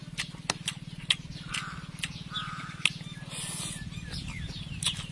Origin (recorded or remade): recorded